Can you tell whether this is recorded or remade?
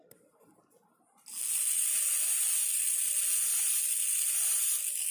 recorded